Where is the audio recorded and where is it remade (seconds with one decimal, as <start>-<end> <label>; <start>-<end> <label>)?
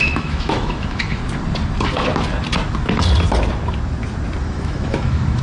0.0-1.2 remade; 1.2-4.4 recorded; 4.4-5.4 remade